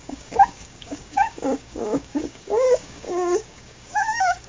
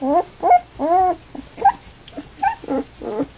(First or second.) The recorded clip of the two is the second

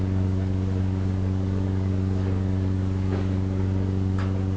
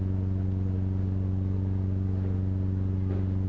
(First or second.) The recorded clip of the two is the second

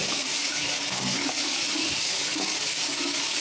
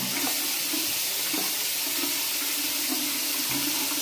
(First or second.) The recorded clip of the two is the second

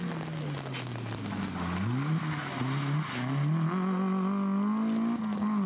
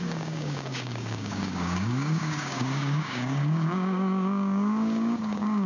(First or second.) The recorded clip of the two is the first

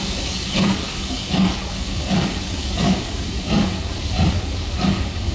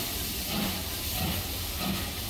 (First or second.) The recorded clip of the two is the second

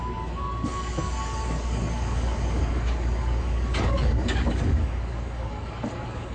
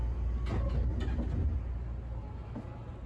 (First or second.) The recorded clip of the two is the second